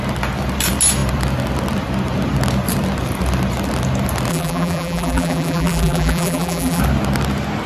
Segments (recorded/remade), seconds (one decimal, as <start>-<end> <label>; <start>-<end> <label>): 0.0-4.3 recorded; 4.3-6.8 remade; 6.8-7.7 recorded